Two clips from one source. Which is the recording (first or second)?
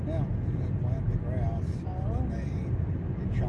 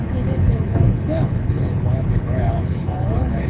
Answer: first